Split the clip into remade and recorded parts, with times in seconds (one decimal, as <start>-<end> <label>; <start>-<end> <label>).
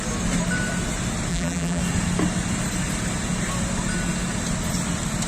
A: 0.0-1.3 recorded; 1.3-1.8 remade; 1.8-5.3 recorded